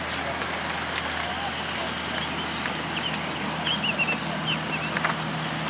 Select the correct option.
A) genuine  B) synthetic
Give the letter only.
A